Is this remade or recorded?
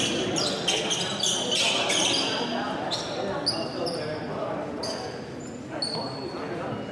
recorded